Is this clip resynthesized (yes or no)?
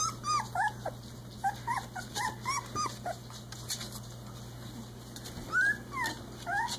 no